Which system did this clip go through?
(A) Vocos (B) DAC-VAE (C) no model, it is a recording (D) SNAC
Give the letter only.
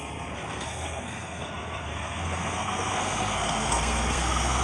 D